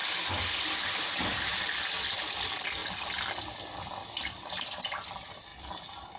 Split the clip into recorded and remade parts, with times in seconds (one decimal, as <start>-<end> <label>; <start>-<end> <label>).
0.0-2.8 remade; 2.8-3.5 recorded; 3.5-6.2 remade